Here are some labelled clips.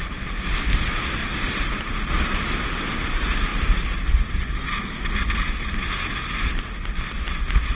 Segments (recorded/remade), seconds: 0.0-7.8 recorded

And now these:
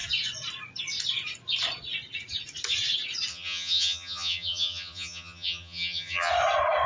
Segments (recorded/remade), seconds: 0.0-3.3 recorded; 3.3-6.3 remade; 6.3-6.9 recorded

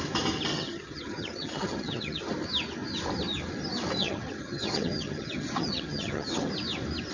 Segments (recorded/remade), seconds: 0.0-0.5 recorded; 0.5-2.3 remade; 2.3-4.0 recorded; 4.0-6.5 remade; 6.5-7.1 recorded

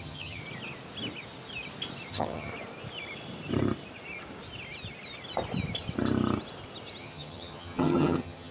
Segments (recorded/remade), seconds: 0.0-0.4 remade; 0.4-2.1 recorded; 2.1-2.5 remade; 2.5-7.0 recorded; 7.0-8.5 remade

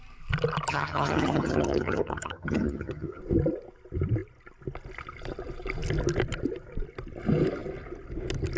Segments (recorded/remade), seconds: 0.0-0.7 recorded; 0.7-3.2 remade; 3.2-8.6 recorded

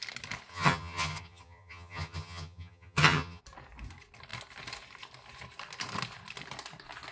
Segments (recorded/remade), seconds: 0.0-0.5 recorded; 0.5-3.4 remade; 3.4-7.1 recorded

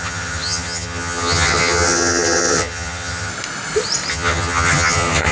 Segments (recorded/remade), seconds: 0.0-3.3 remade; 3.3-4.1 recorded; 4.1-5.3 remade